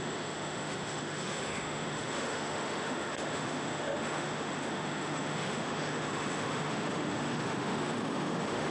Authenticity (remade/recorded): remade